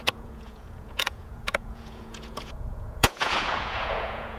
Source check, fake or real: fake